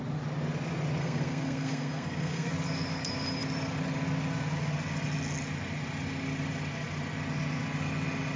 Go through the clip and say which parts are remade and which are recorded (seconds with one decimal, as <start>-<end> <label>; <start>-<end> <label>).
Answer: 0.0-1.0 recorded; 1.0-2.5 remade; 2.5-8.4 recorded